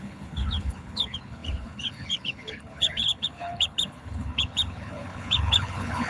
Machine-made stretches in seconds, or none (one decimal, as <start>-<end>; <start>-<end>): 0.0-6.1